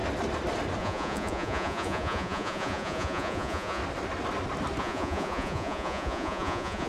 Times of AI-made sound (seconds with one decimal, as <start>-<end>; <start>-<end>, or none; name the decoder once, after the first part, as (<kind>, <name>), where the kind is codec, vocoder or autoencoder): 0.8-3.8 (vocoder, Vocos); 4.8-6.9